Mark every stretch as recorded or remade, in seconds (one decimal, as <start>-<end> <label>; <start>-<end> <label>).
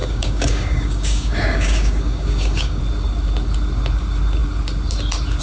0.0-2.8 remade; 2.8-5.4 recorded